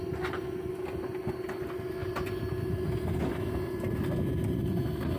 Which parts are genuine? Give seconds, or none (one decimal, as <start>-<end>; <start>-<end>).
0.0-5.2